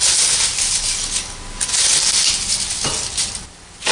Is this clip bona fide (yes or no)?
yes